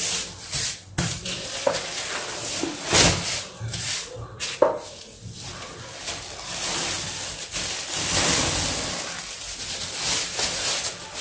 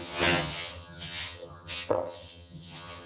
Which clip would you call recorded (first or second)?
first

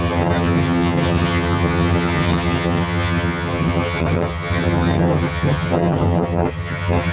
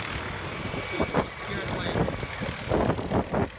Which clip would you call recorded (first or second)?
second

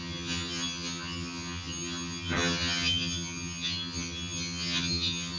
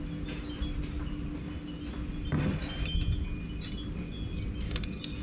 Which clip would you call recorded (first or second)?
second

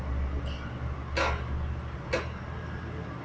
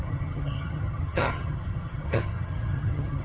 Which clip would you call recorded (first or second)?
first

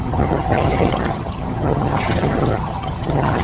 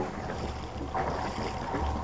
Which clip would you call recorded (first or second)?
second